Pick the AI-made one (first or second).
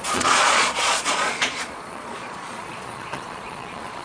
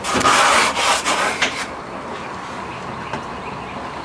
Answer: first